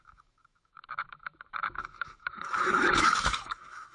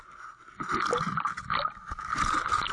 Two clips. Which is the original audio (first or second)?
second